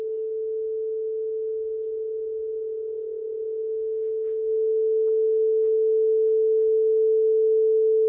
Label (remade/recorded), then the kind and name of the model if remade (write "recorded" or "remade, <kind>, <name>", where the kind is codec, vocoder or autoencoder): recorded